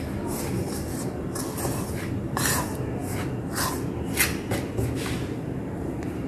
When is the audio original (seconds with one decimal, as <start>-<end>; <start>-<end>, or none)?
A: 0.0-6.3